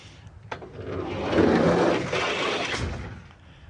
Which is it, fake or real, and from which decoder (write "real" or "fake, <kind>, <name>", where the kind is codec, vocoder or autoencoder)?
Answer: real